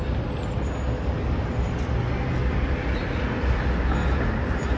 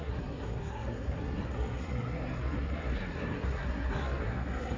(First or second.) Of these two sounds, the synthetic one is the second